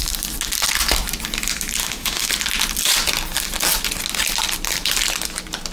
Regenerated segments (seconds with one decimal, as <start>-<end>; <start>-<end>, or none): 1.8-2.3